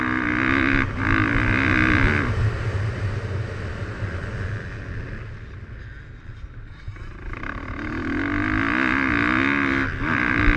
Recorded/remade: recorded